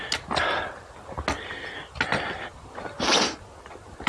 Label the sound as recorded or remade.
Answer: recorded